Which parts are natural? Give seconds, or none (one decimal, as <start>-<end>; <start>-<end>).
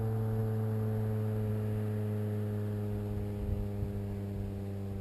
0.0-5.0